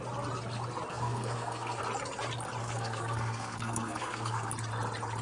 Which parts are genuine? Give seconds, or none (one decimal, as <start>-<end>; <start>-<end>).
0.0-0.9; 1.8-2.6; 4.5-5.2